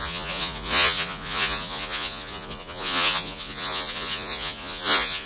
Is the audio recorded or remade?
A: remade